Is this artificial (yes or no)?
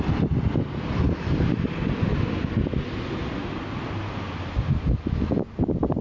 no